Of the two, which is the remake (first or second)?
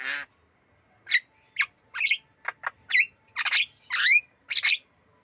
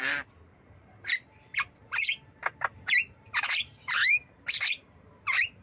second